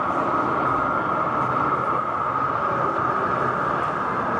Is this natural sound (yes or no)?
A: yes